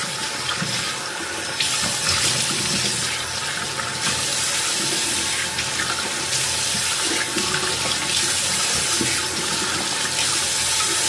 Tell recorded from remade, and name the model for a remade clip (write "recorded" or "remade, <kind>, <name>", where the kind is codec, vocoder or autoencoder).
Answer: recorded